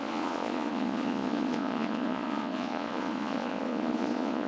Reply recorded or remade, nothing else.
remade